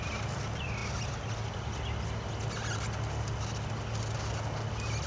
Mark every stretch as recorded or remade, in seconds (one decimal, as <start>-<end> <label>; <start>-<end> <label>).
0.0-5.1 recorded